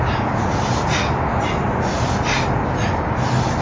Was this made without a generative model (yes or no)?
yes